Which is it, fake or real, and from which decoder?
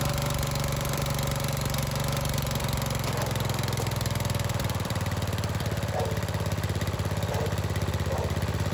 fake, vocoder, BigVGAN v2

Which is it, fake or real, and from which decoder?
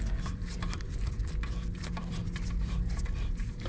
fake, vocoder, BigVGAN v2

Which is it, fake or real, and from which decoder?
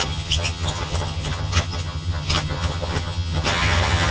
fake, vocoder, HiFi-GAN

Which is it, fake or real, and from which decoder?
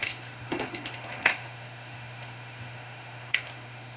fake, autoencoder, DAC-VAE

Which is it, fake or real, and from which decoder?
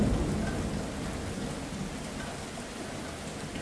real